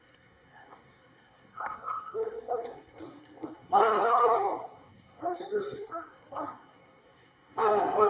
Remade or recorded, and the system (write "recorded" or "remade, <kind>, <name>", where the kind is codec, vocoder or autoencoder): remade, codec, SNAC